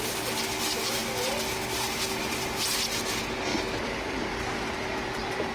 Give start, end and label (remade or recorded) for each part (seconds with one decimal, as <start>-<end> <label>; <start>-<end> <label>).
0.0-5.5 recorded